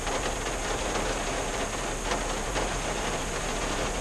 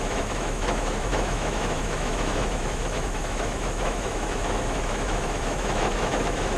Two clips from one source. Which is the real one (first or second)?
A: first